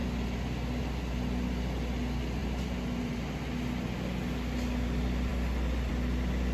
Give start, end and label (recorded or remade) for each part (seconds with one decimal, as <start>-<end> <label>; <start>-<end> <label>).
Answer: 0.0-2.4 recorded; 2.4-3.2 remade; 3.2-6.5 recorded